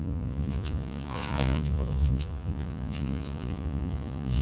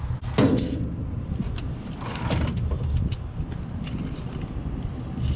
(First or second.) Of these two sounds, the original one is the second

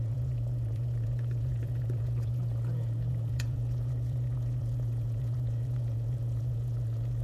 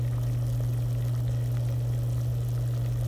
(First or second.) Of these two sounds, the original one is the second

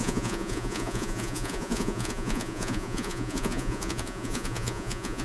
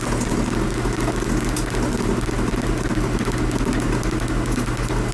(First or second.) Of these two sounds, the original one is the second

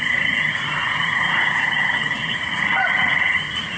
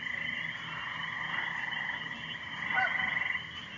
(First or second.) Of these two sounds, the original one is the second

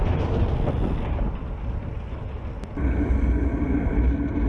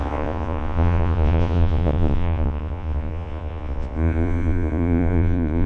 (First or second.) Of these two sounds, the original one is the first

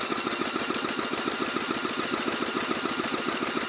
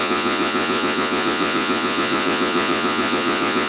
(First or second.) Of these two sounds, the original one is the first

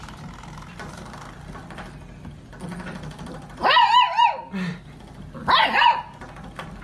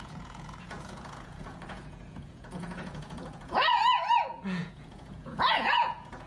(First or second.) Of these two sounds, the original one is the first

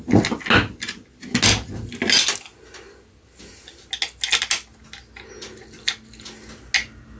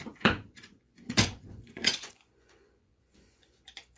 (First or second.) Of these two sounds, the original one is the first